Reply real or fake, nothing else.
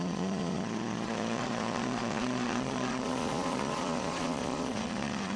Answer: fake